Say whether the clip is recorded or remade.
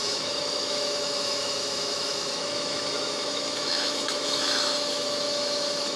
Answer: remade